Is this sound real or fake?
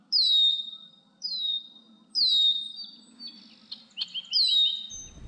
real